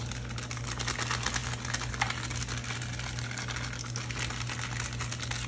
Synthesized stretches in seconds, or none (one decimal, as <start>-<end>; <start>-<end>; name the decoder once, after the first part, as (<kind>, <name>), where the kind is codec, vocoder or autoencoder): none